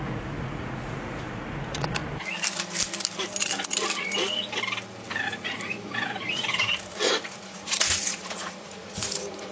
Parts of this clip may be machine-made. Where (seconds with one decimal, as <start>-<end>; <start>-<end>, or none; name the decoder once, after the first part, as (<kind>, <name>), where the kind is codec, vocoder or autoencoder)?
0.0-2.0 (vocoder, Vocos); 5.1-9.5